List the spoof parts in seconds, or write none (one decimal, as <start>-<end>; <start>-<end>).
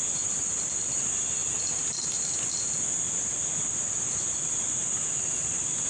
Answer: none